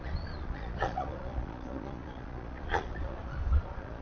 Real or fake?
fake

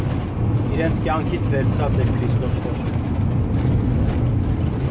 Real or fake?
real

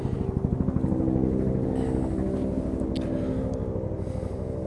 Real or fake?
real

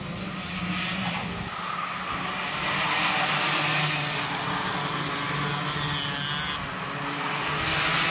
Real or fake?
real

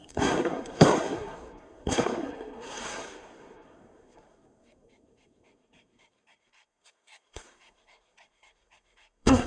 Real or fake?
fake